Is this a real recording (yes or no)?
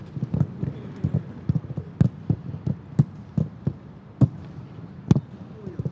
yes